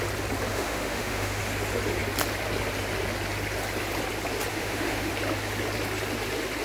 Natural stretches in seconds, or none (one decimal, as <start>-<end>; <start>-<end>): 0.0-0.5; 1.4-4.5; 5.1-6.6